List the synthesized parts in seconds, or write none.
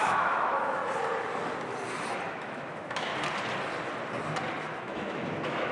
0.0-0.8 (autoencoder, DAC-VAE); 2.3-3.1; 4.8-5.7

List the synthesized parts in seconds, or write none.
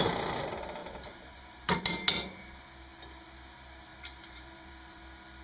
0.8-1.8 (vocoder, BigVGAN v2); 3.9-5.0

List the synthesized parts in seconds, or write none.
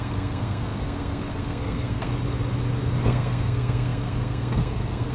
0.0-2.1 (codec, SNAC); 3.0-5.1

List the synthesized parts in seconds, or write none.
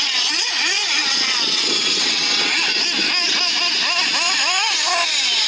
0.0-2.7 (vocoder, WaveNeXt)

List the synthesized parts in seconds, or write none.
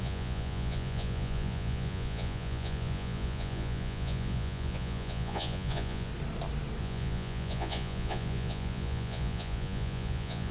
0.0-6.1 (vocoder, Vocos); 6.8-10.5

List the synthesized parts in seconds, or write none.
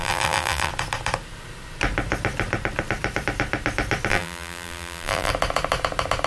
0.0-0.7 (vocoder, BigVGAN v2); 4.1-5.3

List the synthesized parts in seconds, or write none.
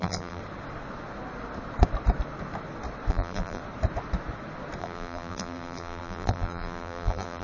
0.0-0.4 (vocoder, BigVGAN v2); 3.1-3.6; 4.8-7.4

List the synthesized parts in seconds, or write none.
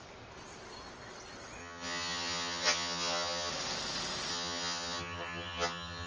1.6-3.5 (vocoder, HiFi-GAN); 4.3-6.1